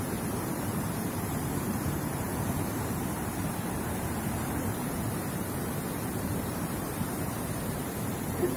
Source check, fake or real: fake